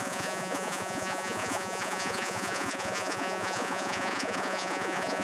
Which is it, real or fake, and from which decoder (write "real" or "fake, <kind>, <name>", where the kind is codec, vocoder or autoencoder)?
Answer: fake, vocoder, Vocos